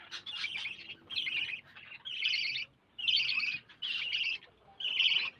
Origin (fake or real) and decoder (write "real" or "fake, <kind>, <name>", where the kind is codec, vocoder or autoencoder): real